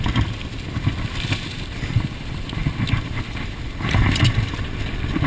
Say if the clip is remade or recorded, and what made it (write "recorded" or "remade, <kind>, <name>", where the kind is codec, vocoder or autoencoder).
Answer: recorded